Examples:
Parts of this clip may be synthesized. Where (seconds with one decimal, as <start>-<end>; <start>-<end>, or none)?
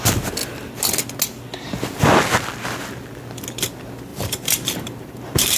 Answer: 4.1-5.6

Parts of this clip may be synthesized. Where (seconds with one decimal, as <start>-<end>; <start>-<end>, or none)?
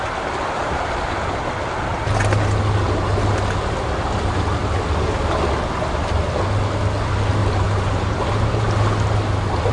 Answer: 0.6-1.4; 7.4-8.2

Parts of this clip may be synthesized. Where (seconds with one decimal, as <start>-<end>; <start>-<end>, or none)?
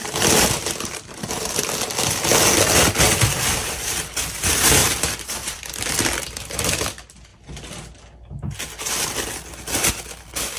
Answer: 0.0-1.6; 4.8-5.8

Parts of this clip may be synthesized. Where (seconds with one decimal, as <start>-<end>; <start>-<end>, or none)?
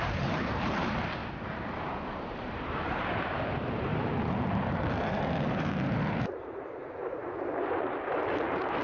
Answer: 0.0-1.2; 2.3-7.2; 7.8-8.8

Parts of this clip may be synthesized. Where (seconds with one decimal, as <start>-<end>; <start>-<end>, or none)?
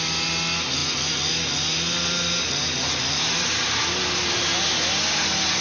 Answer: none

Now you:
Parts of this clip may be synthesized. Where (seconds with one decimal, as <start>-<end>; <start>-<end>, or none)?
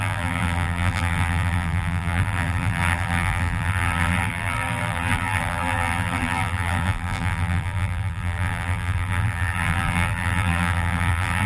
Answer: 0.0-11.5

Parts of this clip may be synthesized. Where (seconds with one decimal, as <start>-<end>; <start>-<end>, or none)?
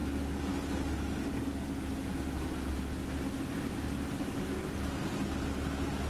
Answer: none